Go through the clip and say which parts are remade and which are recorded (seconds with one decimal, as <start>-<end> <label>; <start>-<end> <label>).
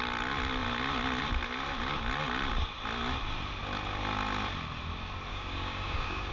0.0-5.3 recorded; 5.3-6.3 remade